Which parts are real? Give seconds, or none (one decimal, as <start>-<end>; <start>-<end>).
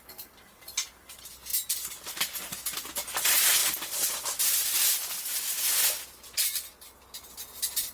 0.0-3.6; 4.1-7.9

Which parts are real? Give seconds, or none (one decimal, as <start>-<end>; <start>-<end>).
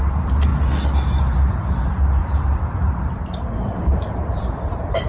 0.5-1.2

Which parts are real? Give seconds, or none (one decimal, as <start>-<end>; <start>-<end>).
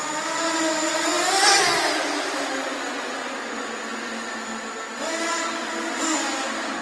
0.0-6.8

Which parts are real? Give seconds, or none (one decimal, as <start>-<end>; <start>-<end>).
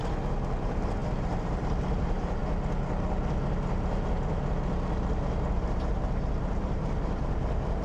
0.0-0.6; 2.4-5.5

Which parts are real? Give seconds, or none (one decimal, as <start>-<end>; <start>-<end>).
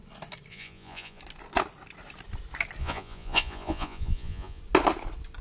0.0-0.5; 1.2-2.8; 4.6-5.4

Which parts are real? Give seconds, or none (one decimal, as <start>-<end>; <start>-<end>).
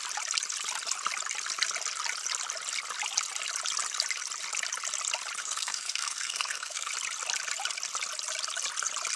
0.0-5.4; 6.9-9.2